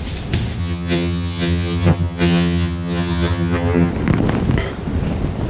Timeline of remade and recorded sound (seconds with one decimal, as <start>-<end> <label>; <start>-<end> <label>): 0.0-0.6 recorded; 0.6-3.9 remade; 3.9-5.5 recorded

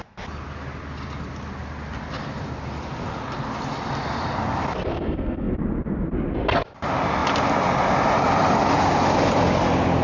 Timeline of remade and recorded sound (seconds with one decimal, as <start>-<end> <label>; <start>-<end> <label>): 0.0-4.9 recorded; 4.9-5.5 remade; 5.5-10.0 recorded

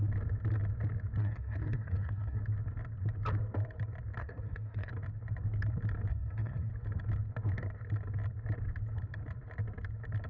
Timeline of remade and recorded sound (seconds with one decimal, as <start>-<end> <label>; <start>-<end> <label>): 0.0-1.2 recorded; 1.2-2.4 remade; 2.4-4.2 recorded; 4.2-4.9 remade; 4.9-6.1 recorded; 6.1-6.7 remade; 6.7-10.3 recorded

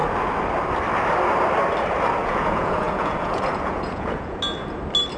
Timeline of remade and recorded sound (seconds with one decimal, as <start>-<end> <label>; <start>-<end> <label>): 0.0-2.2 recorded; 2.2-4.4 remade; 4.4-5.2 recorded

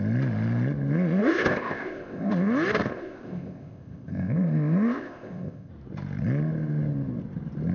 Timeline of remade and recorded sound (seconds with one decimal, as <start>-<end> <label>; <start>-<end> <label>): 0.0-1.2 recorded; 1.2-2.3 remade; 2.3-2.9 recorded; 2.9-5.7 remade; 5.7-7.7 recorded

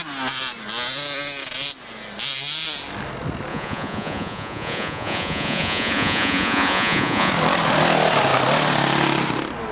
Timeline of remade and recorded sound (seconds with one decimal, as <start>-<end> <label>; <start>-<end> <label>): 0.0-3.5 recorded; 3.5-7.3 remade; 7.3-9.7 recorded